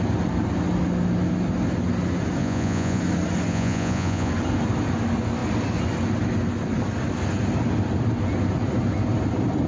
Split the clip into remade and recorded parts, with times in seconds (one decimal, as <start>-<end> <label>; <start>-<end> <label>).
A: 0.0-2.4 recorded; 2.4-3.0 remade; 3.0-3.5 recorded; 3.5-4.3 remade; 4.3-9.7 recorded